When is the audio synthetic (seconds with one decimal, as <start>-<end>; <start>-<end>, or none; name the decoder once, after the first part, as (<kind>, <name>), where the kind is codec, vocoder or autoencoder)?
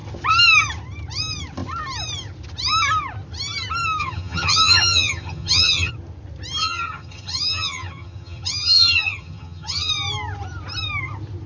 4.0-5.9 (vocoder, HiFi-GAN); 6.6-9.9